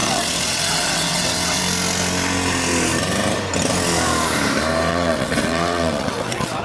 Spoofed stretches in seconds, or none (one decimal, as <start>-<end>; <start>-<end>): 0.0-1.6; 4.9-6.6